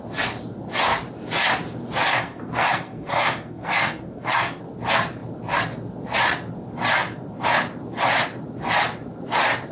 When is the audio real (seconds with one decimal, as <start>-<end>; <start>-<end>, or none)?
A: 0.0-2.1; 4.6-9.7